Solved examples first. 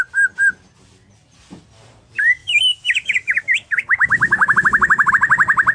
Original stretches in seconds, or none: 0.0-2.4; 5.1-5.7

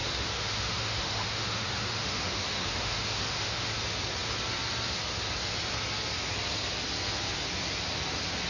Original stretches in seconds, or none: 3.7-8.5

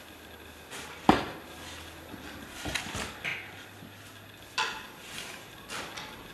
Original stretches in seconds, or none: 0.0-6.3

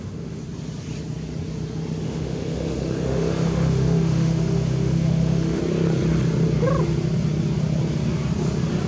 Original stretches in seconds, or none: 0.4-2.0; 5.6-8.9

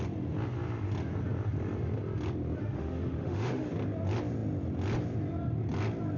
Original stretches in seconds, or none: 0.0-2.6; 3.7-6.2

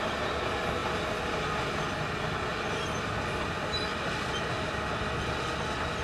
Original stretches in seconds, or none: 0.0-6.0